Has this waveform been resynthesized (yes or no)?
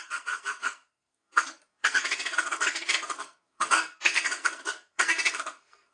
yes